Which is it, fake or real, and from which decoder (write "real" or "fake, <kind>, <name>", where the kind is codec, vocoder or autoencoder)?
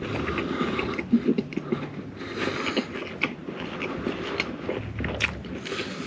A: real